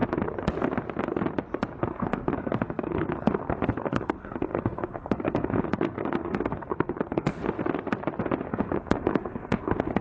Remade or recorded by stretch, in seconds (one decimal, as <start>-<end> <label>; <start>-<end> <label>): 0.0-1.8 recorded; 1.8-7.4 remade; 7.4-8.5 recorded; 8.5-10.0 remade